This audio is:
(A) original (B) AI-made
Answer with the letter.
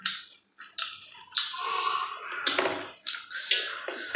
A